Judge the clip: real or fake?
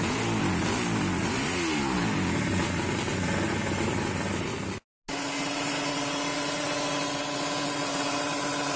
real